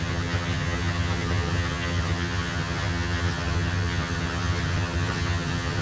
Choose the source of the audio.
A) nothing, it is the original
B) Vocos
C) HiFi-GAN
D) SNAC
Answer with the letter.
C